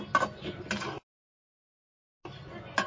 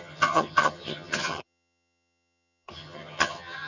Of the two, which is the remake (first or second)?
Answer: second